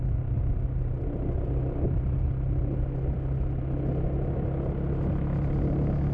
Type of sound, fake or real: real